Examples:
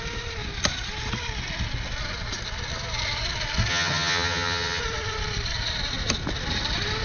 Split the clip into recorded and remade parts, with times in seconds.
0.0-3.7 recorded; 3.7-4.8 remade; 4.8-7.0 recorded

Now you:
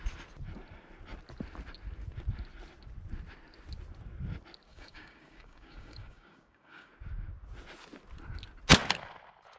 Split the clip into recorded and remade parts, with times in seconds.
0.0-4.7 recorded; 4.7-6.9 remade; 6.9-9.6 recorded

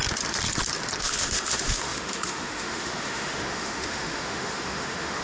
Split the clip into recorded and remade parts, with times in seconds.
0.0-1.0 recorded; 1.0-5.2 remade

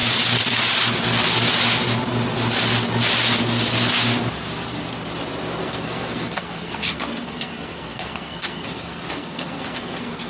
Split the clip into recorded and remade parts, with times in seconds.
0.0-5.6 recorded; 5.6-10.3 remade

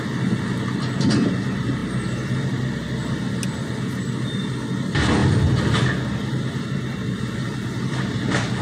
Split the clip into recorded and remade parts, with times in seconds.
0.0-8.6 recorded